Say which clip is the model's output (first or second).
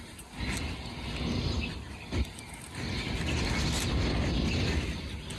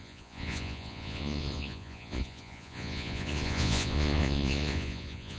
second